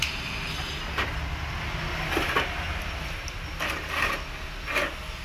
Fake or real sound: real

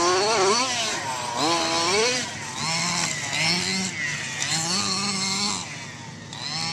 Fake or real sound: real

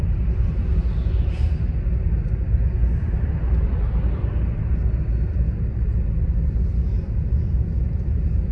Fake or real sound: real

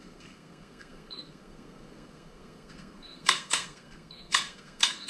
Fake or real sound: fake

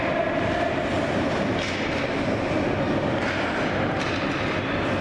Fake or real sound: real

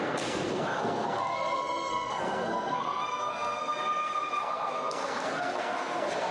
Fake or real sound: fake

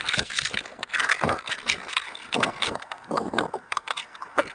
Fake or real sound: fake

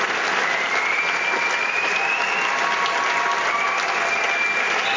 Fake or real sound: real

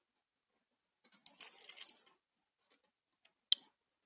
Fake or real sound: real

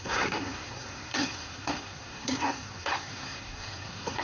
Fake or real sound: fake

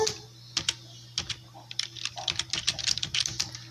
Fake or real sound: real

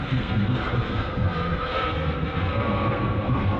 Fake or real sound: fake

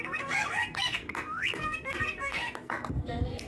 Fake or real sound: fake